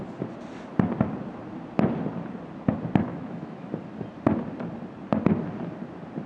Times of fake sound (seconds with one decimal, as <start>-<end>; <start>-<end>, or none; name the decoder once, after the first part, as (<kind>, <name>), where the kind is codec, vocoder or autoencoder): 3.1-3.7 (autoencoder, DAC-VAE)